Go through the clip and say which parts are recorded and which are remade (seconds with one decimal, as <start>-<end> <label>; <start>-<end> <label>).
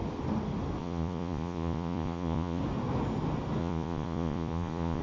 0.0-0.8 recorded; 0.8-2.6 remade; 2.6-3.6 recorded; 3.6-5.0 remade